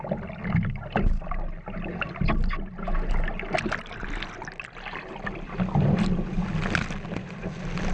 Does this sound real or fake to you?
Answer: real